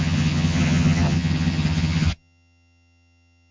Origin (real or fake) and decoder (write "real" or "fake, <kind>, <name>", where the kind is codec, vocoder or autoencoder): fake, vocoder, HiFi-GAN